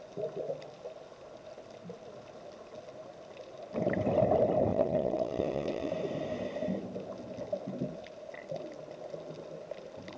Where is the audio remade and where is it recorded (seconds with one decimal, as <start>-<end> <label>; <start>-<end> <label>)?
0.0-4.7 recorded; 4.7-5.9 remade; 5.9-10.2 recorded

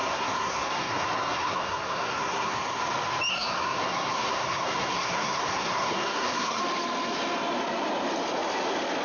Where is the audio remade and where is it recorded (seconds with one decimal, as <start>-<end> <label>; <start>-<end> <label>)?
0.0-2.8 remade; 2.8-3.3 recorded; 3.3-6.6 remade; 6.6-9.0 recorded

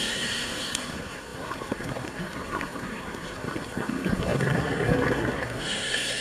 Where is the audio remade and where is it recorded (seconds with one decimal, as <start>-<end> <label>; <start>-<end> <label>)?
0.0-6.2 remade

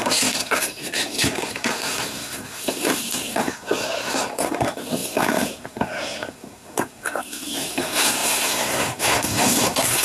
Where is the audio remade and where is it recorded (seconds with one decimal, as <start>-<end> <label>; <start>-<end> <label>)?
0.0-10.0 remade

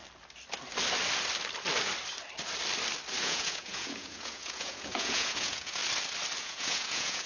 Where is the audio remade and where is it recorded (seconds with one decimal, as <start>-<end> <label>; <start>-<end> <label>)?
0.0-3.2 recorded; 3.2-5.8 remade; 5.8-6.4 recorded; 6.4-7.3 remade

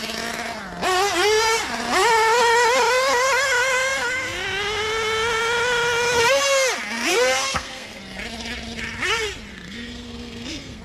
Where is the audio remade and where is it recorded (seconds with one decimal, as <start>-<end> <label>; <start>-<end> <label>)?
0.0-7.1 recorded; 7.1-8.0 remade; 8.0-9.5 recorded; 9.5-10.8 remade

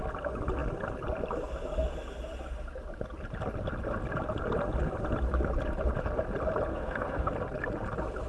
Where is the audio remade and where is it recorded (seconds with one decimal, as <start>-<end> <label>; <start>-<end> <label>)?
0.0-6.7 recorded; 6.7-7.3 remade; 7.3-8.3 recorded